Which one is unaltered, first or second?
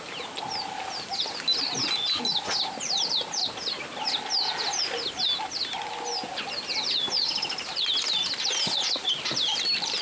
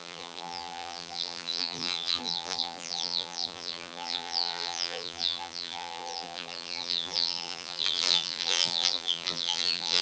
first